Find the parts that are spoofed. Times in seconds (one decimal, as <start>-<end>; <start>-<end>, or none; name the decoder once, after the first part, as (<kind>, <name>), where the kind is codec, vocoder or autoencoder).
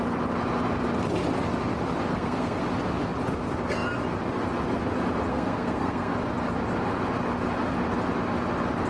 2.1-2.6 (codec, SNAC); 5.3-6.1